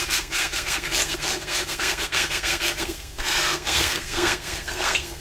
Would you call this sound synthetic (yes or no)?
yes